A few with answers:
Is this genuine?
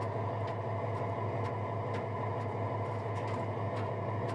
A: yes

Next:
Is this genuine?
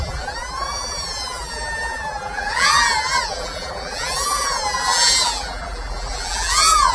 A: no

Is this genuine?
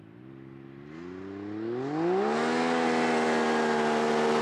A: yes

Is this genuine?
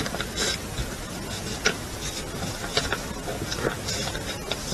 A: yes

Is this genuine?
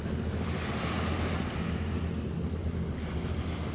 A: yes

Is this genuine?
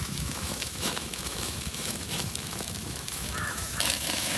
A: no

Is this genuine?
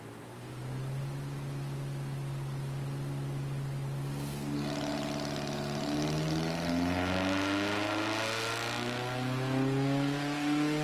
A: yes